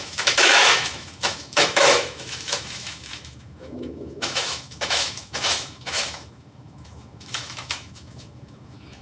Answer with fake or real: fake